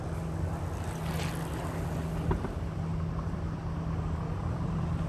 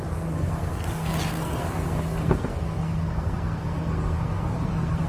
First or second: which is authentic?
first